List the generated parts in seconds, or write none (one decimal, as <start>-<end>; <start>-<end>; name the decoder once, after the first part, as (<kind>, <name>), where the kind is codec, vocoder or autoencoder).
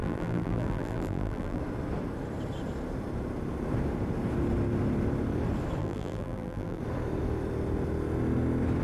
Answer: 0.0-1.6 (vocoder, BigVGAN v2); 5.8-6.8